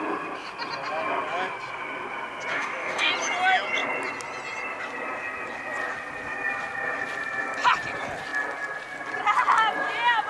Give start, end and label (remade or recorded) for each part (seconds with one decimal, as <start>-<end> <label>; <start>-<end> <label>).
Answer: 0.0-2.5 recorded; 2.5-3.1 remade; 3.1-10.3 recorded